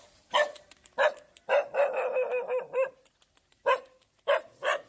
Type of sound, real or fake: real